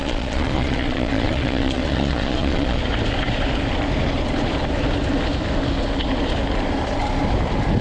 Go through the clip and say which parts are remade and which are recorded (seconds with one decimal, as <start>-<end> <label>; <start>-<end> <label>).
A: 0.0-2.8 remade; 2.8-7.8 recorded